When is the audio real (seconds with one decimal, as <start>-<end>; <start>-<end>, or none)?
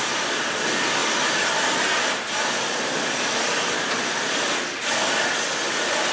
0.0-6.1